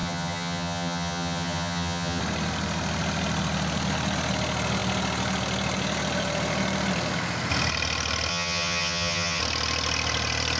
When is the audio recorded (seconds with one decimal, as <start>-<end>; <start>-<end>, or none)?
2.2-8.3; 9.4-10.6